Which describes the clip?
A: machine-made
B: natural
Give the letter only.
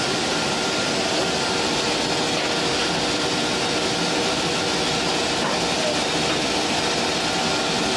B